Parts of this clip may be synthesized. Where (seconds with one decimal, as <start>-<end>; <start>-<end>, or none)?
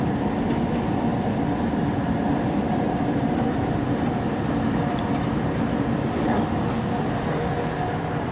1.1-5.0